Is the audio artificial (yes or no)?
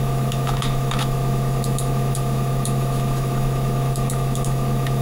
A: yes